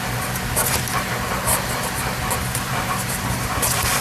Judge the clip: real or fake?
real